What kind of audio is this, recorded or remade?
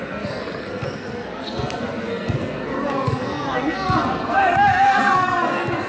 remade